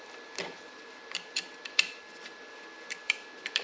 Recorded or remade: remade